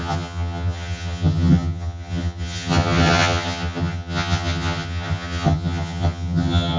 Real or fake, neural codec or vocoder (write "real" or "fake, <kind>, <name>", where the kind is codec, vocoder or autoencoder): fake, vocoder, HiFi-GAN